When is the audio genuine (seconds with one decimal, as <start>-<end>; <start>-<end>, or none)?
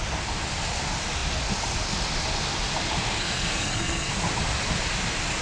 0.0-3.2; 4.1-5.4